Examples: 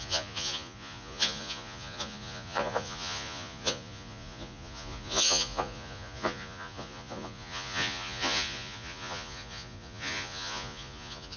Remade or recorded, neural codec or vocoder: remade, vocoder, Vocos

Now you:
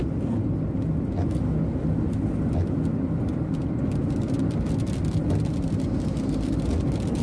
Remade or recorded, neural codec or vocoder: recorded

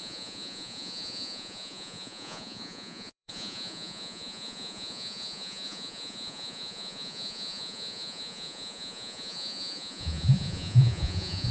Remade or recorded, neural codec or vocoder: remade, vocoder, Vocos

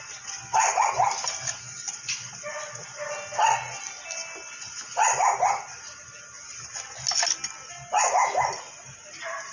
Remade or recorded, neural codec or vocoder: recorded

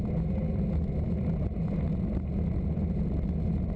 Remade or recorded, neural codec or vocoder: recorded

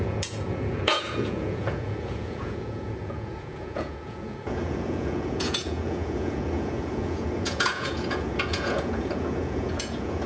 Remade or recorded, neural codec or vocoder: remade, vocoder, Vocos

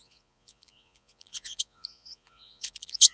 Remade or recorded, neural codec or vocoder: remade, vocoder, Vocos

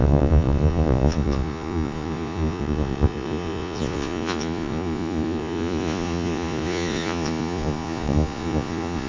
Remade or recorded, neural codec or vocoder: remade, vocoder, Vocos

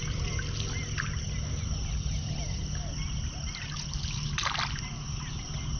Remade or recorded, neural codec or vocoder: recorded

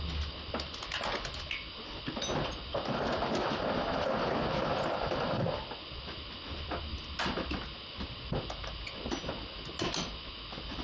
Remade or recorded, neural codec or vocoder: recorded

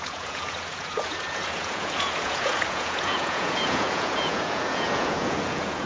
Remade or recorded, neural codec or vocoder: remade, vocoder, Vocos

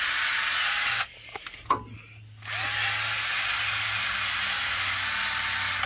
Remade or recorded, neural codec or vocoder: recorded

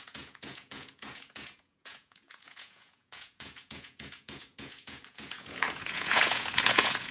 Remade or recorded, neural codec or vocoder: remade, vocoder, Vocos